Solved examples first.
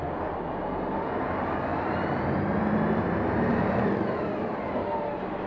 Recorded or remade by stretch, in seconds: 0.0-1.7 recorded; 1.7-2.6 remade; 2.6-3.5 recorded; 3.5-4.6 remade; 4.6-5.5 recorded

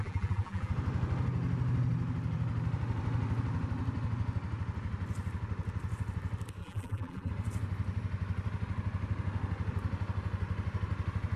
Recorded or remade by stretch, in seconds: 0.0-0.7 remade; 0.7-6.6 recorded; 6.6-7.3 remade; 7.3-11.4 recorded

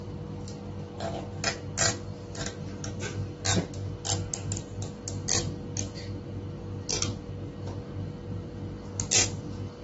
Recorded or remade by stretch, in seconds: 0.0-9.8 recorded

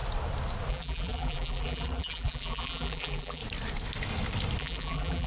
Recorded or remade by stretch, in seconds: 0.0-0.7 recorded; 0.7-3.4 remade; 3.4-4.6 recorded; 4.6-5.3 remade

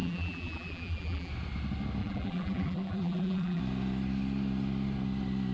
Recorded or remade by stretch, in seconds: 0.0-1.3 remade; 1.3-2.0 recorded; 2.0-3.6 remade; 3.6-5.5 recorded

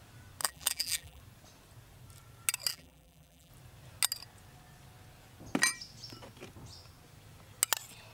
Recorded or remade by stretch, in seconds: 0.0-0.4 recorded; 0.4-1.2 remade; 1.2-2.7 recorded; 2.7-3.5 remade; 3.5-8.1 recorded

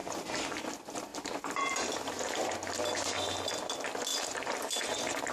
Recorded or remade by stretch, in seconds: 0.0-0.7 remade; 0.7-1.1 recorded; 1.1-2.5 remade; 2.5-4.1 recorded; 4.1-5.3 remade